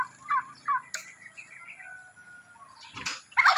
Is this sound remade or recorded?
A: recorded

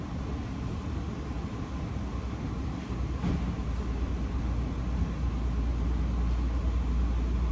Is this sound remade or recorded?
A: recorded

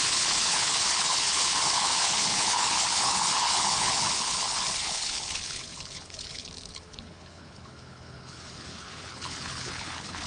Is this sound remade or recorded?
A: remade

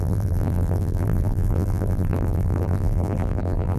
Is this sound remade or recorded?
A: remade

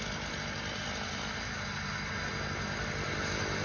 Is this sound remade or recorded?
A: recorded